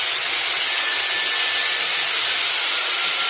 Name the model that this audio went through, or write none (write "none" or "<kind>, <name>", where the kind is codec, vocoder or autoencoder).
none